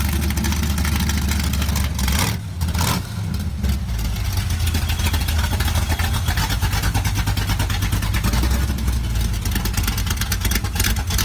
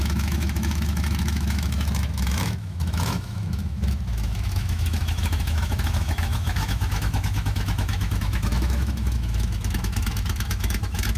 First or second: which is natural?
first